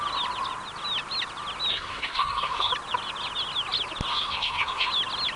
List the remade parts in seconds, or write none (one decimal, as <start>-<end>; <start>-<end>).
1.7-2.7; 4.1-4.9